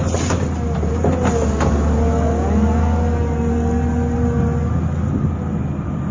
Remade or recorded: recorded